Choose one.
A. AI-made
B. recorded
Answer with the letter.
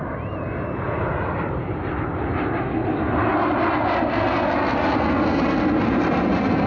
B